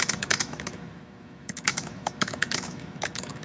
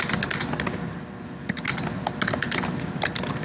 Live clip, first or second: second